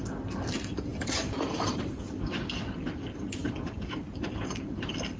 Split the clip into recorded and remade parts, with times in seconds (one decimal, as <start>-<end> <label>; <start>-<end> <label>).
0.0-0.9 recorded; 0.9-1.9 remade; 1.9-3.4 recorded; 3.4-4.2 remade; 4.2-5.2 recorded